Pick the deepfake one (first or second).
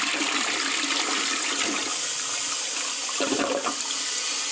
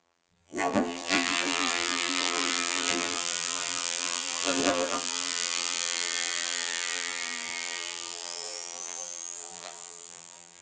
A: second